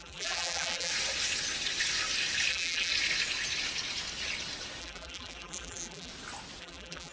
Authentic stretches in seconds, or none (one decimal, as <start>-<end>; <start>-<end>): 0.9-2.5; 2.9-4.8; 6.1-6.6

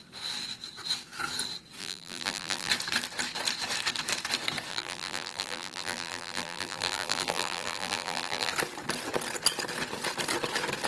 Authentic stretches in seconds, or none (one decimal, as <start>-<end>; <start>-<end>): 0.0-1.8; 2.7-4.7; 8.5-10.9

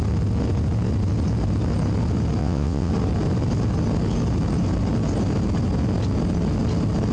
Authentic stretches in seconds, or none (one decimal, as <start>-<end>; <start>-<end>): 0.0-2.4; 2.9-7.1

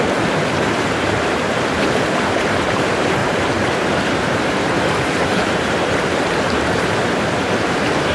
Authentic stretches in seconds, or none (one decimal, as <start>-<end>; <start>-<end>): none